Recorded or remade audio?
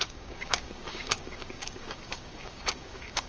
remade